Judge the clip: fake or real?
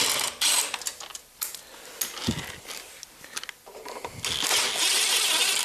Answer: real